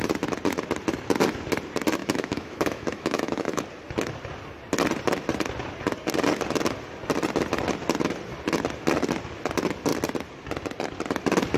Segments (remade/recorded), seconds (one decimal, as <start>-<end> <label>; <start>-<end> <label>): 0.0-2.0 recorded; 2.0-3.6 remade; 3.6-11.6 recorded